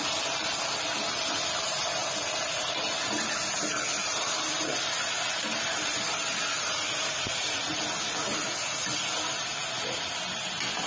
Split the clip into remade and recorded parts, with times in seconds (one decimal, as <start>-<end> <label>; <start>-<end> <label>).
0.0-10.9 recorded